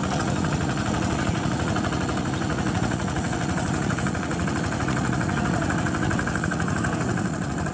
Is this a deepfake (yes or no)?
yes